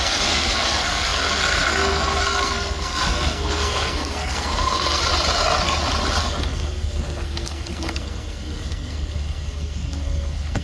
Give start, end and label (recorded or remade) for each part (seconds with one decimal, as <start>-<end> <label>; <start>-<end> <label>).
0.0-5.0 remade; 5.0-6.2 recorded; 6.2-10.6 remade